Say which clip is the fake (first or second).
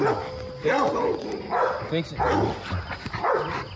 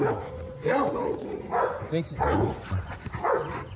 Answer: second